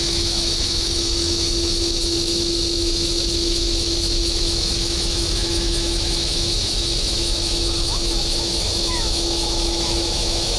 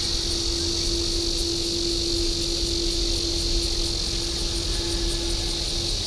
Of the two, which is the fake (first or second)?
first